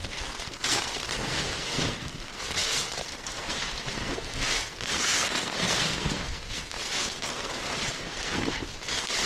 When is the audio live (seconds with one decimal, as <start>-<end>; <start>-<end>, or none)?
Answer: none